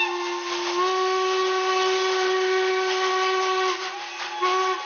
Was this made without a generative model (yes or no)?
yes